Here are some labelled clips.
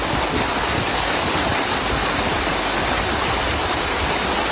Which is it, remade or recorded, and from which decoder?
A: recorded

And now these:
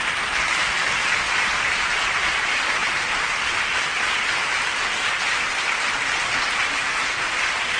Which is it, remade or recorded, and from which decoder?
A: recorded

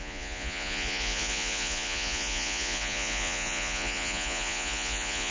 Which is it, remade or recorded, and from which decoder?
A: remade, vocoder, Vocos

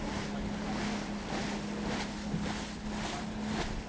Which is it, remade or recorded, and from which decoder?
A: recorded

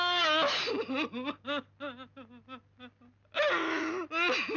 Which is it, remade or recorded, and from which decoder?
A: recorded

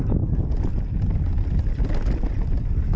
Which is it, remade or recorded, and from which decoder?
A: recorded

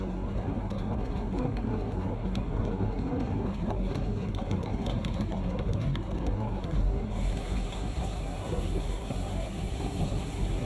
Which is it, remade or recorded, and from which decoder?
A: remade, codec, SNAC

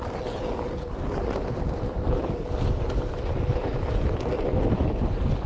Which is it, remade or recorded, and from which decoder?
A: recorded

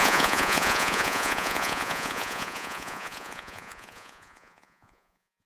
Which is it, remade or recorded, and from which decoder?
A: remade, vocoder, Vocos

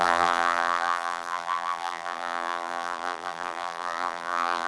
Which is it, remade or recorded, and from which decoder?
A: remade, vocoder, BigVGAN v2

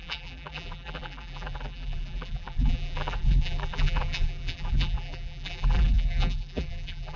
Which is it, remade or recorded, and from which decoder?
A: remade, vocoder, BigVGAN v2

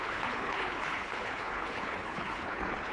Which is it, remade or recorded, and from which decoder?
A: remade, codec, HILCodec